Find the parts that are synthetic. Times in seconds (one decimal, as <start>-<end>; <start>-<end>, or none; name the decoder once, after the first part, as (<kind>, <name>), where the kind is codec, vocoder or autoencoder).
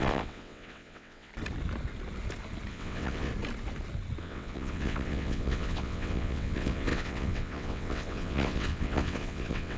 0.0-1.3 (vocoder, WaveNeXt); 2.7-3.3; 4.2-9.8